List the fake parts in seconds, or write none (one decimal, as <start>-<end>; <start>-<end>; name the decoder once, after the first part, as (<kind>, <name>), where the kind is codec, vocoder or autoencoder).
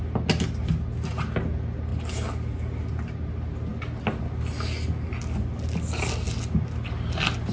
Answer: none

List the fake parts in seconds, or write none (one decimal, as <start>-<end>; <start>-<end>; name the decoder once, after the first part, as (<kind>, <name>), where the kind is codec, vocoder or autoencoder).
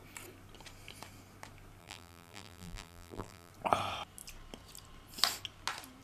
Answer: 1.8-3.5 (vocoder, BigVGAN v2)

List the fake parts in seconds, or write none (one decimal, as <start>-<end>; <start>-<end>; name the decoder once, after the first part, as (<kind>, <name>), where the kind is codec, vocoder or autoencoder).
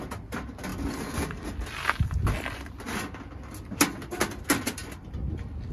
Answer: none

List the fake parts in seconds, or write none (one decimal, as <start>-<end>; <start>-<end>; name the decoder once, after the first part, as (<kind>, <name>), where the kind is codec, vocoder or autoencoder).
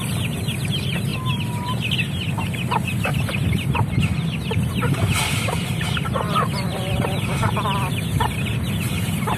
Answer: 0.0-1.1 (vocoder, BigVGAN v2); 2.4-9.4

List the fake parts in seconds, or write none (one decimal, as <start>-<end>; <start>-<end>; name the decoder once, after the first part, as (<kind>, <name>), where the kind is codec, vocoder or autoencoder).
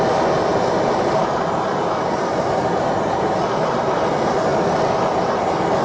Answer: 0.5-4.0 (vocoder, BigVGAN v2)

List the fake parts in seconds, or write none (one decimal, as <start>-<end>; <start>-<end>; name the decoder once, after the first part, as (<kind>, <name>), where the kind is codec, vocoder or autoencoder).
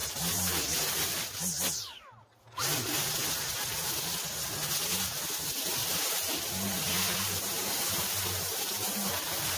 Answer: 0.0-0.8 (vocoder, BigVGAN v2); 5.8-9.6